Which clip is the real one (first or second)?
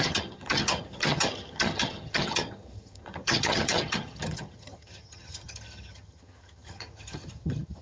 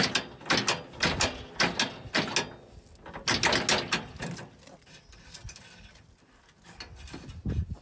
second